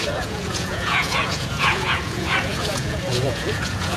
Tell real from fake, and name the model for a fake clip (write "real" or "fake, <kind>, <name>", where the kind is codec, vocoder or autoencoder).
fake, vocoder, Vocos